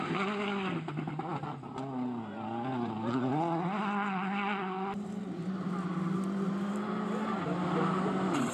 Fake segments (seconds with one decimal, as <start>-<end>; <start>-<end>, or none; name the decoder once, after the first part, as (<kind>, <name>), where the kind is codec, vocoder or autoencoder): none